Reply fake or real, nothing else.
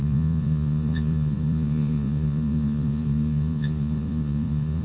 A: fake